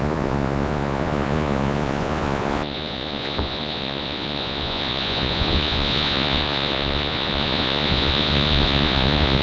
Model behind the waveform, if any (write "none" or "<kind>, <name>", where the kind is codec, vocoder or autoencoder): vocoder, Vocos